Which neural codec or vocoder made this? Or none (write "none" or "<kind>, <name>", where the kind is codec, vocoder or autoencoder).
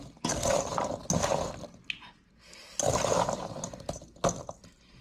none